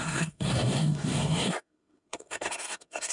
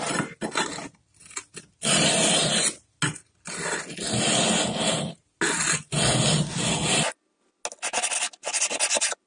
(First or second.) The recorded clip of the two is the second